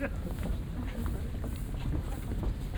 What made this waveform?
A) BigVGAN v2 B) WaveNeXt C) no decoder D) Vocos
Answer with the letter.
A